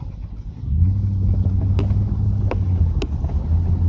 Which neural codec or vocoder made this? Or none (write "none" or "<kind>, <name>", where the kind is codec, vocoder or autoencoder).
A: none